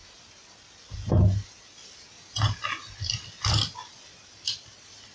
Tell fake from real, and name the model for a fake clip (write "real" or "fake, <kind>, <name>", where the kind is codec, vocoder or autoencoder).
real